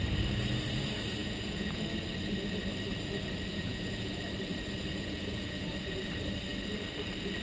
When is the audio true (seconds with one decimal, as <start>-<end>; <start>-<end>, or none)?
0.0-1.2; 1.8-3.5; 4.2-4.9; 6.1-7.4